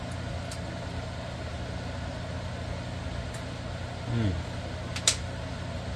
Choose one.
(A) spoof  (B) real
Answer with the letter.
B